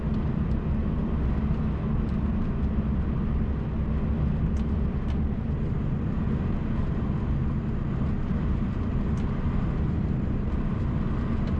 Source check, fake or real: real